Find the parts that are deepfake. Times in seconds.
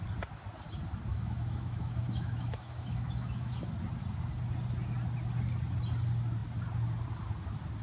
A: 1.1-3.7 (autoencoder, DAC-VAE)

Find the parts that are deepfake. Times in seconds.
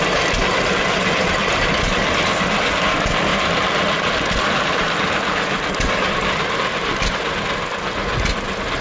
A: 1.4-2.8 (vocoder, BigVGAN v2); 3.3-6.7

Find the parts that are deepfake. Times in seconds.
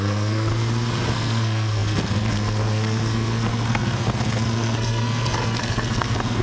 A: 0.0-0.5 (codec, SNAC); 1.1-6.4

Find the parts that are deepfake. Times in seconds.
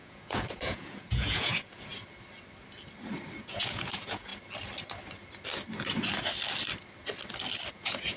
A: 0.0-1.9 (vocoder, Vocos); 3.4-4.3; 7.7-8.2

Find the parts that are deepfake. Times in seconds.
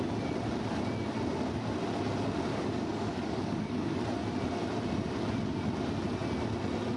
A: 2.5-4.0 (codec, DAC)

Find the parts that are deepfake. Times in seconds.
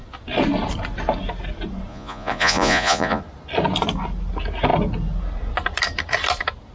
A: 1.9-3.2 (vocoder, Vocos)